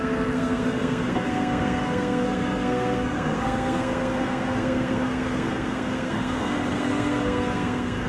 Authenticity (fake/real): fake